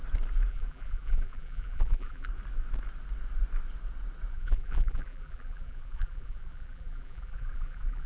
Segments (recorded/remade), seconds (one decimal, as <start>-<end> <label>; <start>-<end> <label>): 0.0-0.5 recorded; 0.5-2.3 remade; 2.3-4.3 recorded; 4.3-8.1 remade